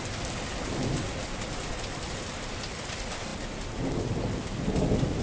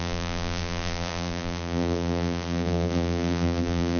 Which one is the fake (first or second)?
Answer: second